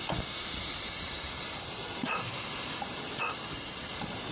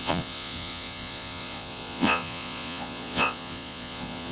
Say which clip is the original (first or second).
first